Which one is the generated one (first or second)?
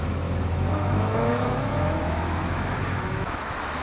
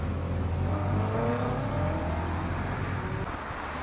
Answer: first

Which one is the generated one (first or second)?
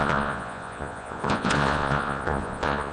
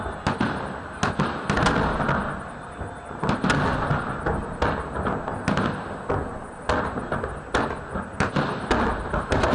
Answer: first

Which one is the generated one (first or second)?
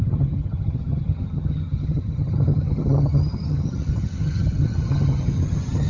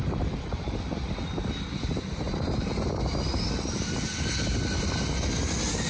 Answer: first